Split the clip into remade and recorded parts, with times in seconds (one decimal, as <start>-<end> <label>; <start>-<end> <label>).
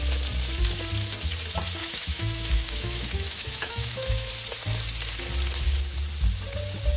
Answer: 0.0-1.8 recorded; 1.8-4.3 remade; 4.3-7.0 recorded